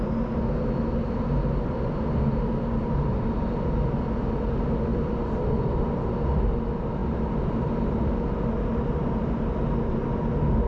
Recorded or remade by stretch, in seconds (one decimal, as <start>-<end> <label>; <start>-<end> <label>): 0.0-10.7 recorded